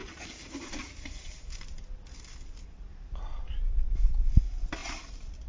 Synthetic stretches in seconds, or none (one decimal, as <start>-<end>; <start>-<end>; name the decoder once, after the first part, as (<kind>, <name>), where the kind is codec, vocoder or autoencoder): 0.0-1.9 (vocoder, BigVGAN v2); 2.9-3.7; 4.8-5.5